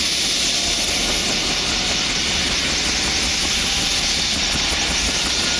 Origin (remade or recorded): recorded